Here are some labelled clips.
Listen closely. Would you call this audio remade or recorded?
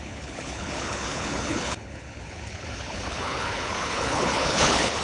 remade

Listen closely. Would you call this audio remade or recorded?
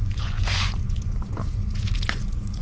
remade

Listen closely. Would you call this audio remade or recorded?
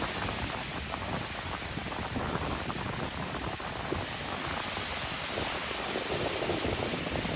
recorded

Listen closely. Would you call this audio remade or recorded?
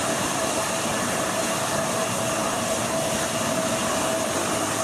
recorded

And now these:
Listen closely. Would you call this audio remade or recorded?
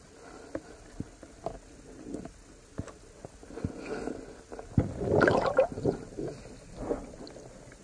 recorded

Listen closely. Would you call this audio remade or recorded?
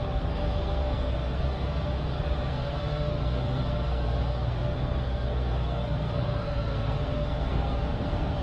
remade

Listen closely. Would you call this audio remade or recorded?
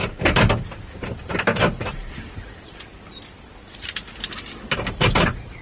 recorded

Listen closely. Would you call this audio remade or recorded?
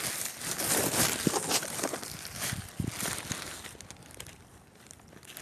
recorded